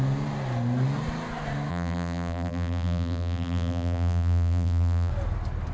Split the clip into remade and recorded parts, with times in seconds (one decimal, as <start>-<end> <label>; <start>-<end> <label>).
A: 0.0-1.7 recorded; 1.7-5.1 remade; 5.1-5.7 recorded